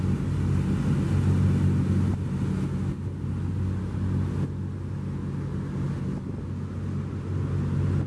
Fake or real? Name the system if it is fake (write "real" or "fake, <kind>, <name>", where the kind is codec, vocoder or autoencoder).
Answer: real